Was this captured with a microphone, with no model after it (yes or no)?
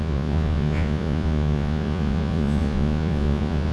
no